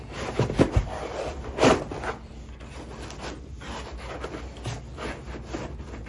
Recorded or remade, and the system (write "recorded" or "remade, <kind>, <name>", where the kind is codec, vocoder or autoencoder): recorded